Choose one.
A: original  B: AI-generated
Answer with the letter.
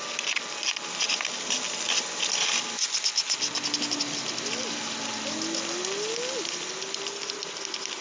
A